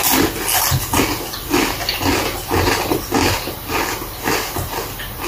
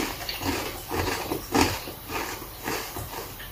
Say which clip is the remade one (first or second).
second